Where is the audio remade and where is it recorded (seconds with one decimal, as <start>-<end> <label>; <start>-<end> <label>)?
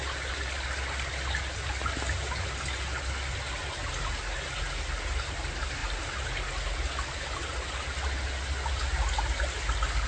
0.0-10.1 recorded